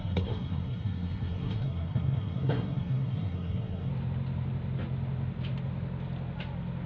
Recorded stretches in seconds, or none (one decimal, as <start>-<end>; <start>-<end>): 3.9-6.9